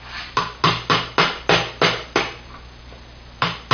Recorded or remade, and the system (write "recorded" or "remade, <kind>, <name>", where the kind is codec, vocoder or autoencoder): recorded